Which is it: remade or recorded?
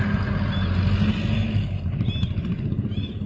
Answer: recorded